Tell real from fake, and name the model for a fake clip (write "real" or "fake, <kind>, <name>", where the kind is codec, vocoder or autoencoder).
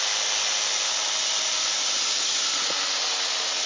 real